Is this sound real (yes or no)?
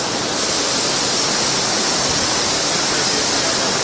yes